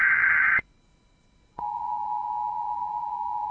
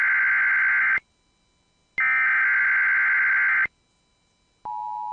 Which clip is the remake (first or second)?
first